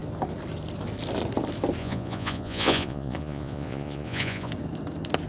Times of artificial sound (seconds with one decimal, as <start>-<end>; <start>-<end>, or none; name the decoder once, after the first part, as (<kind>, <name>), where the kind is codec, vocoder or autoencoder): 1.8-4.5 (vocoder, Vocos)